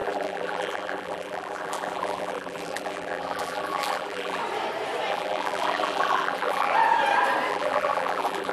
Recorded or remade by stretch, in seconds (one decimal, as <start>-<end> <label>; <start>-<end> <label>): 0.0-4.4 remade; 4.4-5.1 recorded; 5.1-6.7 remade; 6.7-7.5 recorded; 7.5-8.5 remade